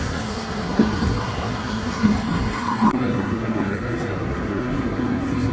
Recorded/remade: remade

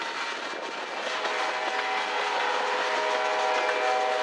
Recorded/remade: recorded